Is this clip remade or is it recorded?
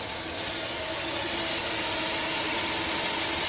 recorded